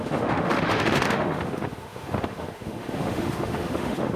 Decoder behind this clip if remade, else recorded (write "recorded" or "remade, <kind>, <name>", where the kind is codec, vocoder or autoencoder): remade, autoencoder, DAC-VAE